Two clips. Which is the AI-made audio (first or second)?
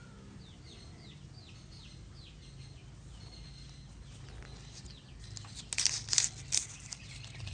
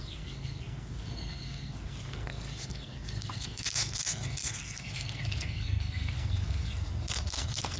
second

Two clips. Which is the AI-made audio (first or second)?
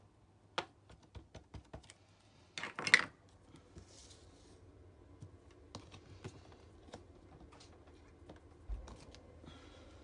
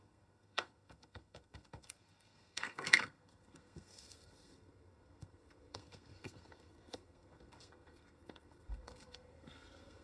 second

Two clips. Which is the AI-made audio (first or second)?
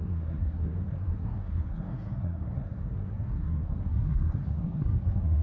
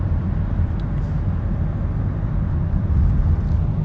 first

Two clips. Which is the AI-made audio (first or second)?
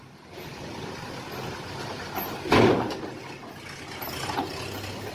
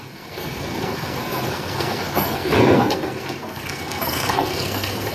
second